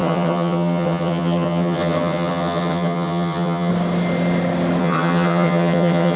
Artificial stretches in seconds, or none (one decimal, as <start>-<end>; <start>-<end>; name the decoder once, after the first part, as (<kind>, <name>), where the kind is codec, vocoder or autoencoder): 0.0-3.7 (vocoder, HiFi-GAN); 4.8-6.2